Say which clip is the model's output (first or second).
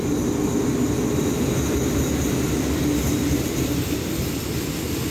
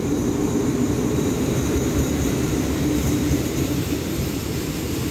second